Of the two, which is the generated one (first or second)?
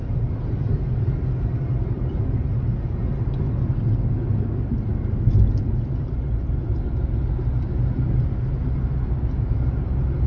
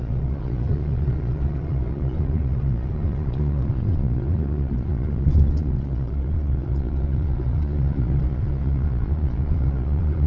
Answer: second